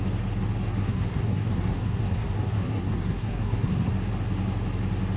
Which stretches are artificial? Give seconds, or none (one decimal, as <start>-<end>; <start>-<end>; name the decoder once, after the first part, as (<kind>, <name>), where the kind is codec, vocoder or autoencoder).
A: 0.8-3.9 (codec, SNAC)

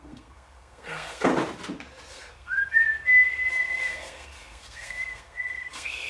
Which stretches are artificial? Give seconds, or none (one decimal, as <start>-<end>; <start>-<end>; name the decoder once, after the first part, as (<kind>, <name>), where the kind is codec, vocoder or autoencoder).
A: 0.0-1.3 (codec, SNAC); 2.1-2.8; 3.5-6.1

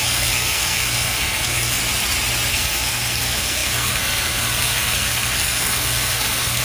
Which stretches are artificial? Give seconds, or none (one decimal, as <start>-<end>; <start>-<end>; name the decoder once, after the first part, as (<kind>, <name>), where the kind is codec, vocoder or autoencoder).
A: 0.0-1.8 (codec, SNAC); 2.5-6.6

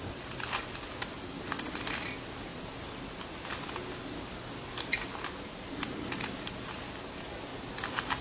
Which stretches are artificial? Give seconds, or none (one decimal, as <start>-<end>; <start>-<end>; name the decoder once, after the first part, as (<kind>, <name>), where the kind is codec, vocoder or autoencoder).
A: none